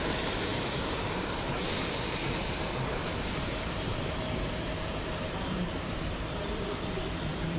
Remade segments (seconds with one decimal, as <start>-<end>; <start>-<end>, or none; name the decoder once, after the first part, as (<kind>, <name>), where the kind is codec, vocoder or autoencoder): 0.5-1.6 (vocoder, BigVGAN v2); 3.0-7.6

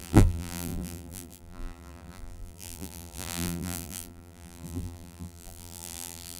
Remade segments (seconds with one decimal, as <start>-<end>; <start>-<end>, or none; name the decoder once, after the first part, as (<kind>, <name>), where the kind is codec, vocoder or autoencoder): 0.0-6.4 (vocoder, BigVGAN v2)